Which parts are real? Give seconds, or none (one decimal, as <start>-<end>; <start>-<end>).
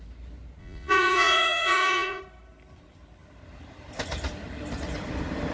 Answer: 0.0-0.6; 2.2-5.5